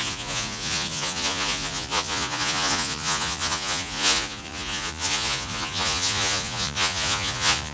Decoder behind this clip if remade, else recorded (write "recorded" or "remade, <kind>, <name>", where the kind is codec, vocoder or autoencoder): remade, vocoder, Vocos